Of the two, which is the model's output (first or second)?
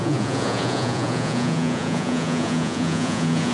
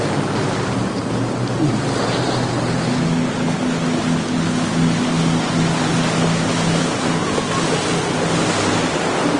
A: first